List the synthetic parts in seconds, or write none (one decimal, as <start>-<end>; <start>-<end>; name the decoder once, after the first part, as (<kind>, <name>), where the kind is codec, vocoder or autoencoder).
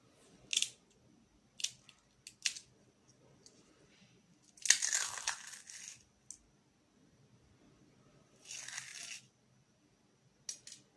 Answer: none